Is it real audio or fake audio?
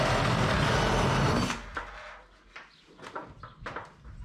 real